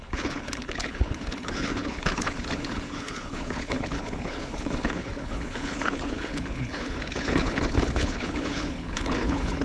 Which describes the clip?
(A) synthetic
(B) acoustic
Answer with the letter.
A